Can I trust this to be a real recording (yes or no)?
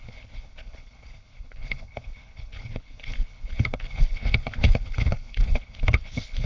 no